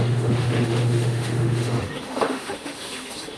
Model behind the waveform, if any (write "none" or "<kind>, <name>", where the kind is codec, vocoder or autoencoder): autoencoder, DAC-VAE